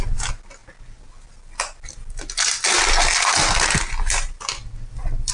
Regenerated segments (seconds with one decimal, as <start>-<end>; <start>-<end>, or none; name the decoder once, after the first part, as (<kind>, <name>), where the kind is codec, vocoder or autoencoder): none